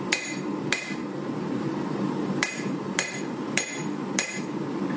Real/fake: fake